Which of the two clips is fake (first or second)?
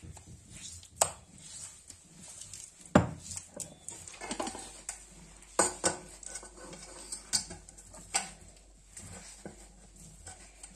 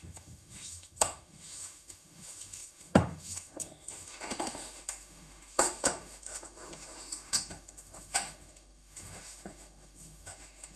second